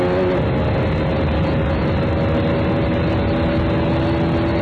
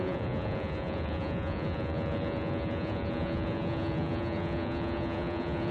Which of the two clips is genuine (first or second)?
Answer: first